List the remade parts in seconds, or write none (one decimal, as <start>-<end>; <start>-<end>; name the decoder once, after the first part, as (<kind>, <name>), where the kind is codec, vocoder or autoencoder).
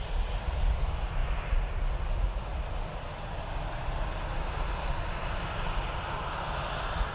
none